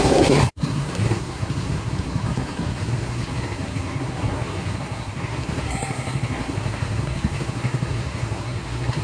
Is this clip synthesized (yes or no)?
yes